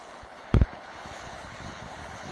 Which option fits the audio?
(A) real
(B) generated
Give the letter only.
B